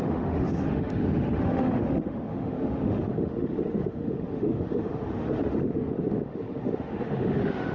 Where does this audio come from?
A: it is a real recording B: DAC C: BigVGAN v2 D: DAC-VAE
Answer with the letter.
D